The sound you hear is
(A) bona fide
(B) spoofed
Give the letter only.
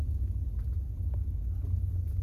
A